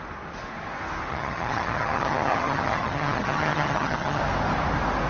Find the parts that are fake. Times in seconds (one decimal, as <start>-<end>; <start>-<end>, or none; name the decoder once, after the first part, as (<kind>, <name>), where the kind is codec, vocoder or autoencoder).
1.1-4.2 (vocoder, HiFi-GAN)